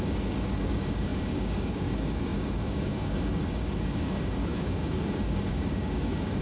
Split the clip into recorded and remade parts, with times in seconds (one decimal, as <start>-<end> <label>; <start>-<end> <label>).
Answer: 0.0-6.4 remade